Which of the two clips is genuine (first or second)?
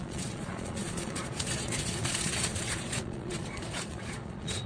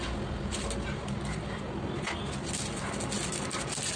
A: second